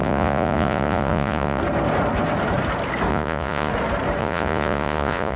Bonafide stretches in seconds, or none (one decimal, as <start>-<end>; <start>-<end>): 1.6-3.1; 3.7-4.2